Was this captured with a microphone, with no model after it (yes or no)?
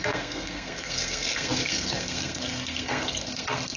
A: no